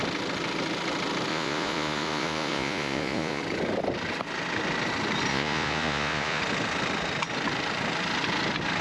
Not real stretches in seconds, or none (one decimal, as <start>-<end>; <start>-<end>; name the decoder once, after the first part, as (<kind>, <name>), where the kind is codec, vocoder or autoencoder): 1.3-3.4 (vocoder, Vocos); 5.3-6.4